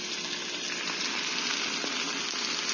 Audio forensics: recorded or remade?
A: recorded